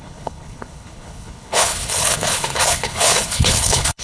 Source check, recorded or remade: remade